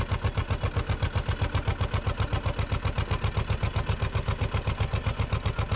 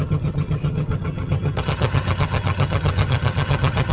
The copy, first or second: second